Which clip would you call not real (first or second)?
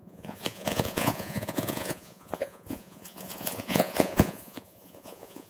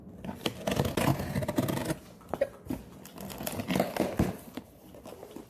first